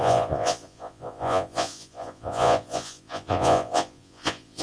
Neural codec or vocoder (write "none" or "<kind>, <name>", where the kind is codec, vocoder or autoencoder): vocoder, Vocos